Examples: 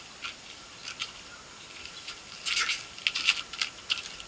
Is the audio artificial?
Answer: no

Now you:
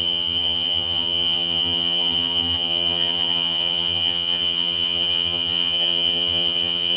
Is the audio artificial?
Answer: yes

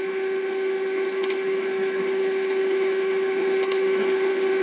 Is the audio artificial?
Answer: yes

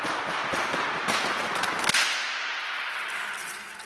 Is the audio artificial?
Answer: no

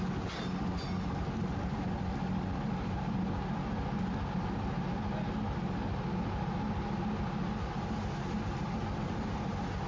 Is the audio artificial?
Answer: no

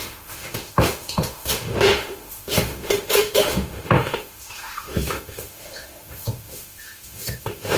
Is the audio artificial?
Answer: yes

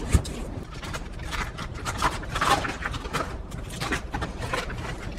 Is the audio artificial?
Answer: yes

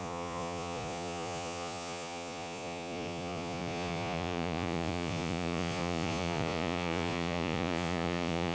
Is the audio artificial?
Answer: yes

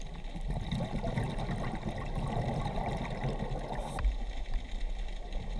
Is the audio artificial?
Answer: no